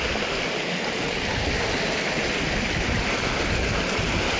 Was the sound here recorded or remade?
recorded